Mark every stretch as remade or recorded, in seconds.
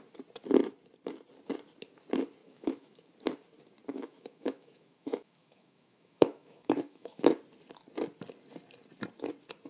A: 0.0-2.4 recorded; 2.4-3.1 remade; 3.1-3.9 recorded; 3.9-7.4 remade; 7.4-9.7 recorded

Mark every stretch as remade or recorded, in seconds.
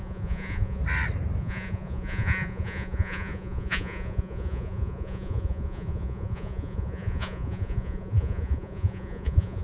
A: 0.0-0.8 remade; 0.8-1.4 recorded; 1.4-9.6 remade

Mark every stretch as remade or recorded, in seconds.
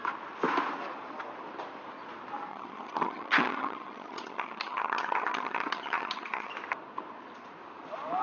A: 0.0-2.5 recorded; 2.5-6.5 remade; 6.5-8.2 recorded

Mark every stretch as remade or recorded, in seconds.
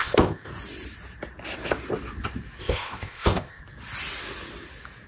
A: 0.0-0.5 remade; 0.5-2.6 recorded; 2.6-3.6 remade; 3.6-5.1 recorded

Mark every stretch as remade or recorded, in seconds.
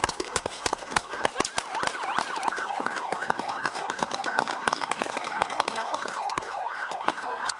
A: 0.0-1.3 remade; 1.3-2.5 recorded; 2.5-7.6 remade